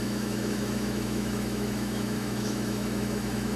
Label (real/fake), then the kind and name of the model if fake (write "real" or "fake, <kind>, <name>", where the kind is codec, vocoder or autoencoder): fake, autoencoder, DAC-VAE